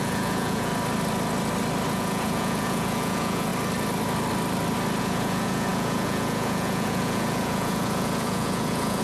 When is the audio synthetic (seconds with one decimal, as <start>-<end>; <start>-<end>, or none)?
0.0-0.7; 1.9-3.5; 5.0-9.0